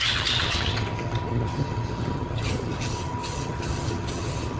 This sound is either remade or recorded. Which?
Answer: remade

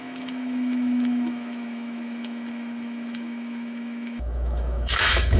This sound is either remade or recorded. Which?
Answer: remade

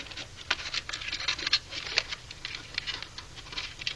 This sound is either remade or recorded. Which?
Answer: recorded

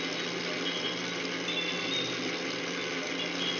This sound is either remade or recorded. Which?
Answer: recorded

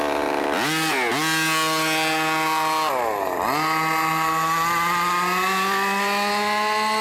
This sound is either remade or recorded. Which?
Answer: recorded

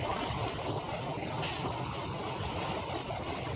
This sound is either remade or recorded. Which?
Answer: recorded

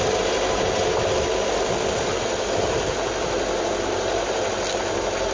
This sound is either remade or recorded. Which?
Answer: recorded